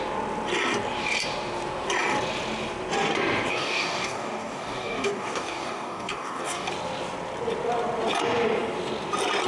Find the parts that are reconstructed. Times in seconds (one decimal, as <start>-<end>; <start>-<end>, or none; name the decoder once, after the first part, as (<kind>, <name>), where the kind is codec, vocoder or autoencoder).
3.5-6.7 (codec, DAC)